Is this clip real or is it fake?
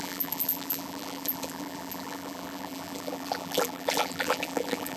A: fake